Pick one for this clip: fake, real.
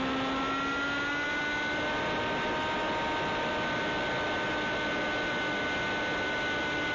real